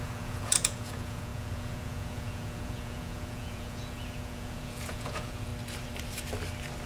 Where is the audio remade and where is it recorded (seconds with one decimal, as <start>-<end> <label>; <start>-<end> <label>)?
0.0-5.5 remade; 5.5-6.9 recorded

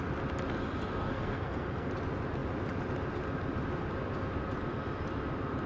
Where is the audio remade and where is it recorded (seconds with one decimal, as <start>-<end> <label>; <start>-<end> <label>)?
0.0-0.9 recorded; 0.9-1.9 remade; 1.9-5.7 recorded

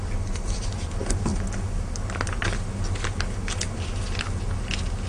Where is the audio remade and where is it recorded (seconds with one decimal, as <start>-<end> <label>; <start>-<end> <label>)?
0.0-5.1 recorded

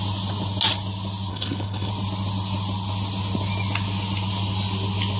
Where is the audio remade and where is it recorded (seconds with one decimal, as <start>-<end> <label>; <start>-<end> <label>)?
0.0-1.3 recorded; 1.3-1.9 remade; 1.9-5.2 recorded

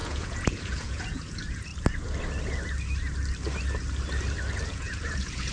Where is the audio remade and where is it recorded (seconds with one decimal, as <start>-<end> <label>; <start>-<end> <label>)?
0.0-1.7 remade; 1.7-4.7 recorded; 4.7-5.5 remade